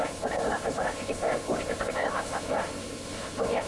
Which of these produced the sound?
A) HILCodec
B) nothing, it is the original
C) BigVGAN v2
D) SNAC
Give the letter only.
D